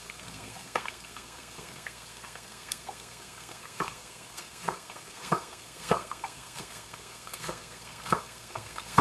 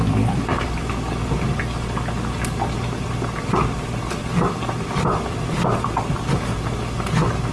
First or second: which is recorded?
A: second